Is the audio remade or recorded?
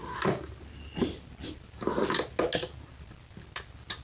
recorded